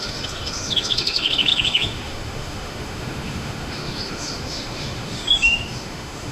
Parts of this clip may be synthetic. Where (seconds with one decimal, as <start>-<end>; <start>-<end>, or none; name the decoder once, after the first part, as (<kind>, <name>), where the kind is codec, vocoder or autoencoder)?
0.0-6.3 (autoencoder, DAC-VAE)